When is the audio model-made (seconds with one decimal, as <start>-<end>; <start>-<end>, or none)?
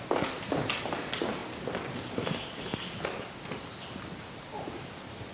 0.0-1.4; 4.6-5.3